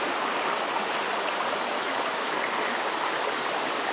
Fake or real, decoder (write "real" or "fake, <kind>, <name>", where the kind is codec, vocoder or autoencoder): real